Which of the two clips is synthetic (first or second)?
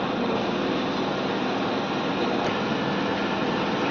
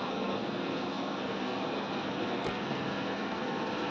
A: second